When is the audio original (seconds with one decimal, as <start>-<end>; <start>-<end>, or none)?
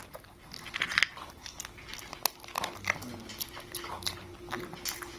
0.0-5.2